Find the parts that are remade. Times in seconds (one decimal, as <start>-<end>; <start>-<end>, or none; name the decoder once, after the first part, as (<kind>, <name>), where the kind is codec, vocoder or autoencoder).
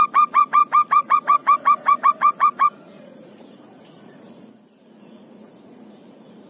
0.0-6.5 (vocoder, Vocos)